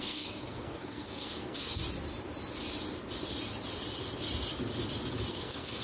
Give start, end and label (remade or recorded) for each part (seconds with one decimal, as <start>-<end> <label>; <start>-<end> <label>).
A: 0.0-1.8 remade; 1.8-5.3 recorded; 5.3-5.8 remade